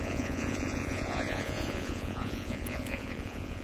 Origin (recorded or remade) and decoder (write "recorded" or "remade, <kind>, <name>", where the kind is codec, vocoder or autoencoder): remade, vocoder, Vocos